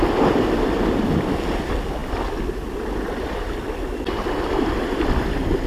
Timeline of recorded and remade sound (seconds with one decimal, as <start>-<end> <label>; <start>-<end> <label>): 0.0-5.7 recorded